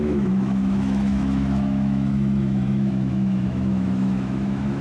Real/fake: fake